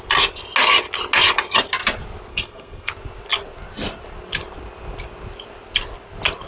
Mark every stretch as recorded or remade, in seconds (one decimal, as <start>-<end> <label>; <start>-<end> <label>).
0.0-2.3 recorded; 2.3-2.9 remade; 2.9-6.5 recorded